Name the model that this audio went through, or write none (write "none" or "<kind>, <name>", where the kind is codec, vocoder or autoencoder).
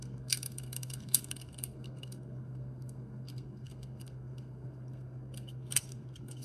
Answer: codec, SNAC